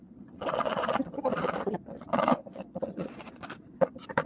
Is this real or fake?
fake